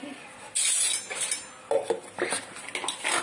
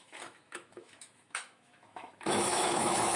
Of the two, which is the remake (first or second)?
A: second